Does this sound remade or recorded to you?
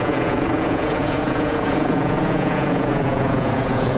remade